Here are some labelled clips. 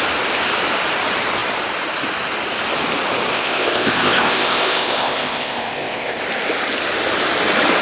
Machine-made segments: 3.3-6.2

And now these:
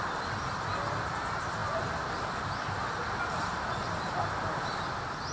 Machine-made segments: none